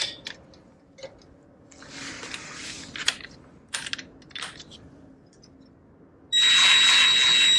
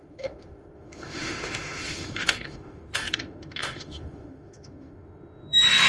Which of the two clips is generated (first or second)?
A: second